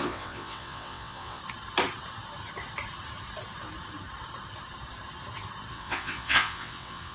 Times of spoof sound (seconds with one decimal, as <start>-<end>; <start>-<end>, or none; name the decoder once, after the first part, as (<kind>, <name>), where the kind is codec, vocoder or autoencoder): 0.0-1.4 (vocoder, WaveNeXt); 5.7-7.1